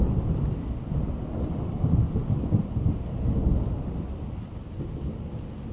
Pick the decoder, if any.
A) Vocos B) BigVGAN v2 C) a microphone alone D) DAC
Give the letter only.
C